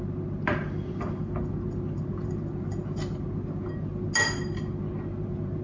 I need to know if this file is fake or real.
real